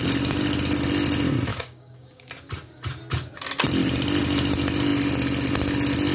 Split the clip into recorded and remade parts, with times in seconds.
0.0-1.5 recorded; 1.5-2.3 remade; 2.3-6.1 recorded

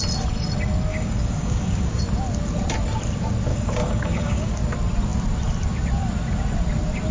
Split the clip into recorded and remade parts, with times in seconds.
0.0-0.9 recorded; 0.9-2.0 remade; 2.0-3.5 recorded; 3.5-4.5 remade; 4.5-7.1 recorded

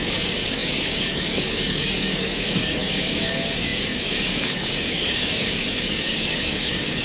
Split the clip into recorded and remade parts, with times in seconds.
0.0-7.0 remade

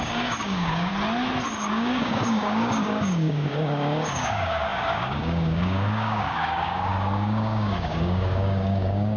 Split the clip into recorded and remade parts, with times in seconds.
0.0-0.9 remade; 0.9-1.7 recorded; 1.7-9.2 remade

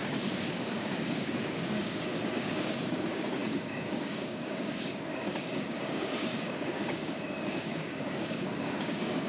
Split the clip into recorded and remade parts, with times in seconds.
0.0-9.3 remade

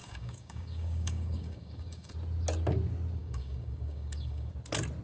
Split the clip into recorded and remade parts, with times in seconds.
0.0-2.1 remade; 2.1-3.2 recorded; 3.2-4.5 remade; 4.5-5.0 recorded

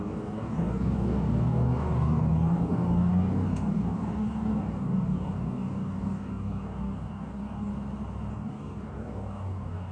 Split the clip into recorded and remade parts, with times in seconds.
0.0-7.7 remade; 7.7-8.3 recorded; 8.3-9.9 remade